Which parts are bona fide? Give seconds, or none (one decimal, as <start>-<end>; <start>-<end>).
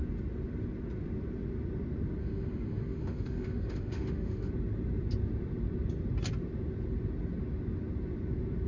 0.0-2.2; 4.5-8.7